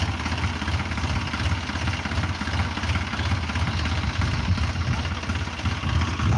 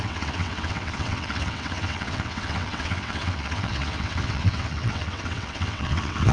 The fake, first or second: second